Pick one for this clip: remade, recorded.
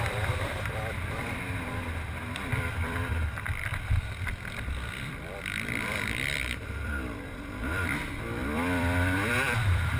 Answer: remade